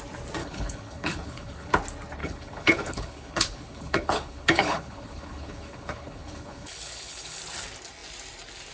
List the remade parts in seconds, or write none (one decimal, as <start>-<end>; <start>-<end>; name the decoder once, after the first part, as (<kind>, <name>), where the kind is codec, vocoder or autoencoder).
0.4-1.7 (codec, HILCodec); 2.2-7.4